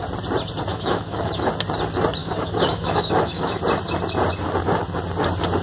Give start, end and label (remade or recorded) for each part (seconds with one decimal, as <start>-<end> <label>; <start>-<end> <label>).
0.0-0.7 recorded; 0.7-1.5 remade; 1.5-2.2 recorded; 2.2-3.6 remade; 3.6-5.6 recorded